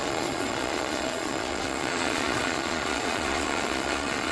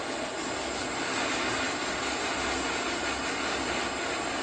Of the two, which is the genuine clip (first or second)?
second